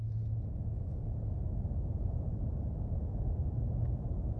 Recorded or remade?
recorded